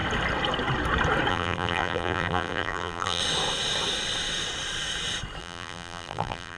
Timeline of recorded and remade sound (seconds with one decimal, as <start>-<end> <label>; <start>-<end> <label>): 0.0-1.3 recorded; 1.3-3.2 remade; 3.2-5.4 recorded; 5.4-6.6 remade